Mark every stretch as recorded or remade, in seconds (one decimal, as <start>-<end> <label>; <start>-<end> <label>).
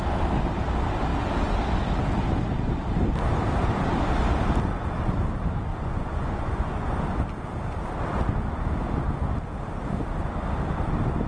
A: 0.0-5.7 recorded; 5.7-7.0 remade; 7.0-11.3 recorded